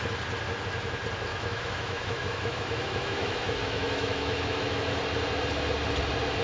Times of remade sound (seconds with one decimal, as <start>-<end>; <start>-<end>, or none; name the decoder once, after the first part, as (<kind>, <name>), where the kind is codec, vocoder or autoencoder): 1.3-5.0 (autoencoder, DAC-VAE)